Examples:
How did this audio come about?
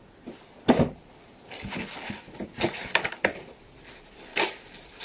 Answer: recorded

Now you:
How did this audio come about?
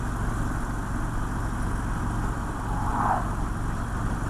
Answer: recorded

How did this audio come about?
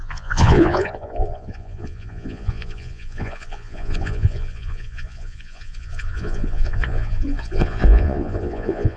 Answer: remade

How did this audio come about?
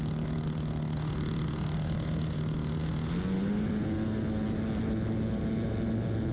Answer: recorded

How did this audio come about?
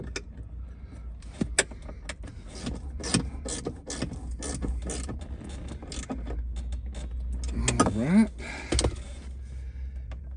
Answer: recorded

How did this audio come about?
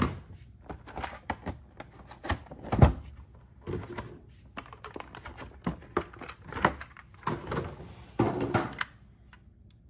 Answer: recorded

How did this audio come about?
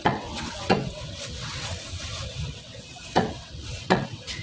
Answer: remade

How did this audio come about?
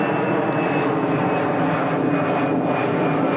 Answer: recorded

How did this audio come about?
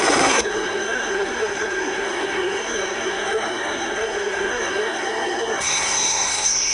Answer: remade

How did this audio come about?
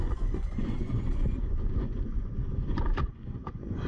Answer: remade